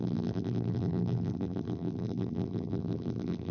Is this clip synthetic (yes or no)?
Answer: yes